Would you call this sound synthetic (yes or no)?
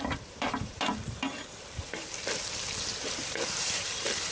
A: yes